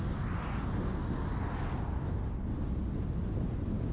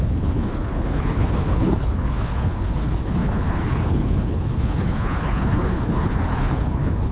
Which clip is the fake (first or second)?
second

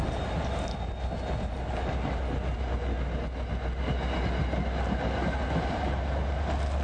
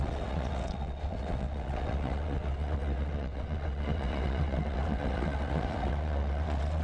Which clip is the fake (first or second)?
second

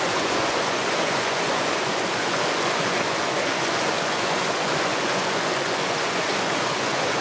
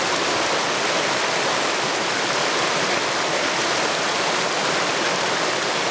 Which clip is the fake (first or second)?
first